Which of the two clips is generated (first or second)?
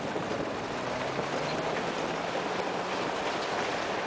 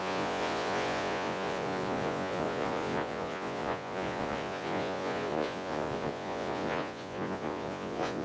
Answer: second